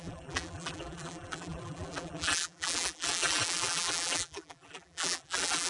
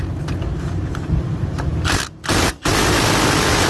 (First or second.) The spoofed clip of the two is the first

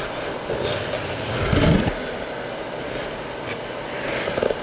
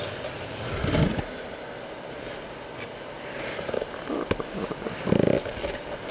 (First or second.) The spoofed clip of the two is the second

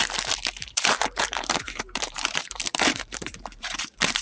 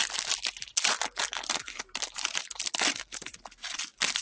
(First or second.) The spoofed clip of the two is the first